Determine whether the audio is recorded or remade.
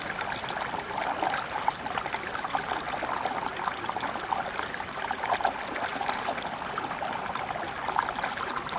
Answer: recorded